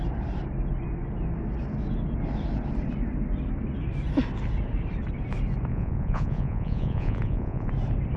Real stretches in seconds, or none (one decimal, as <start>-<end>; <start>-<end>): 0.0-5.7; 7.7-8.2